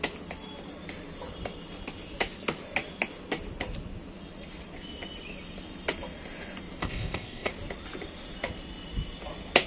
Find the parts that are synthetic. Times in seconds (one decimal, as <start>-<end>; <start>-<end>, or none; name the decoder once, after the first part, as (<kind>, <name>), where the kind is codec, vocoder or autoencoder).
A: 6.8-7.5 (codec, ZipCodec)